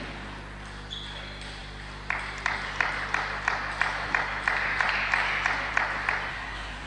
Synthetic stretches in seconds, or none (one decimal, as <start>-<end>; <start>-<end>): 6.3-6.9